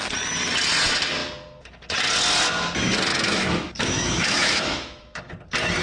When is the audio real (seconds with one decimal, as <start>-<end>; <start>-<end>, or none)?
0.0-3.1; 5.3-5.8